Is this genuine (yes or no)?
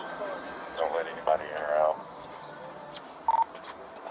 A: yes